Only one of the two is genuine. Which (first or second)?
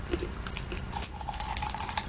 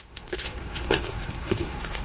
first